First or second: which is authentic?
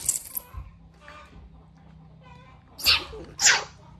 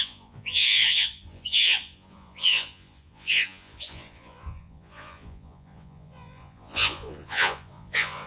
first